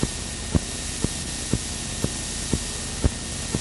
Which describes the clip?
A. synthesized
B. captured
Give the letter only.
B